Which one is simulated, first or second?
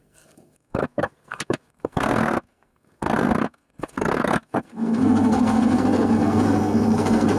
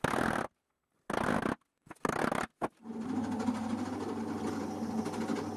first